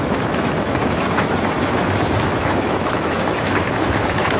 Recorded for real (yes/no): no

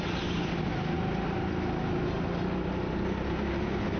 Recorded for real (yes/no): yes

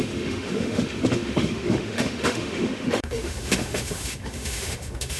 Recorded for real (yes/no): no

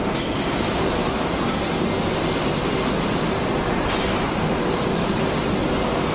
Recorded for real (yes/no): yes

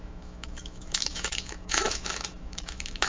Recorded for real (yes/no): no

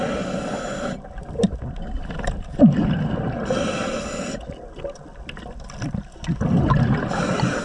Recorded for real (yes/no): yes